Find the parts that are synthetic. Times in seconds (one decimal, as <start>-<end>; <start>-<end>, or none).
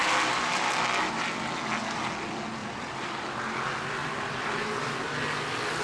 2.6-3.4; 4.0-4.9